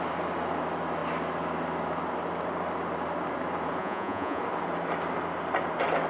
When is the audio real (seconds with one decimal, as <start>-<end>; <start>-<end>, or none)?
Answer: 0.0-3.8; 4.4-6.1